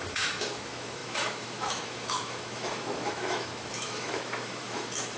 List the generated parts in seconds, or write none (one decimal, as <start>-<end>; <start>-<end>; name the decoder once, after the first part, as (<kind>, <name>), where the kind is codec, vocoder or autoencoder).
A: 0.0-5.2 (autoencoder, DAC-VAE)